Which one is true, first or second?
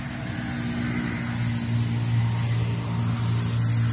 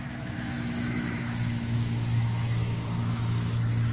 first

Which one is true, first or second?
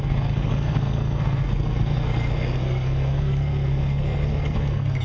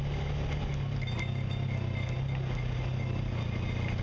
second